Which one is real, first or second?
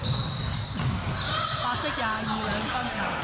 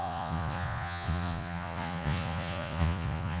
first